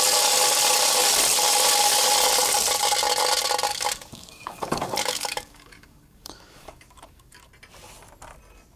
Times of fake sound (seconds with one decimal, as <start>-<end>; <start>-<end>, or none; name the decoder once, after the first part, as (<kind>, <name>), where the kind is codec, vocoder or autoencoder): 3.7-7.5 (codec, DAC)